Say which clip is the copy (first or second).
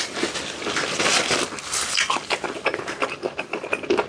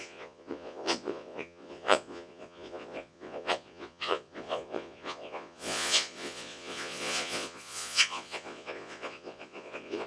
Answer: second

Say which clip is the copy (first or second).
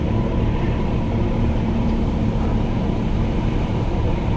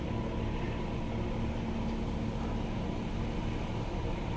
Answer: first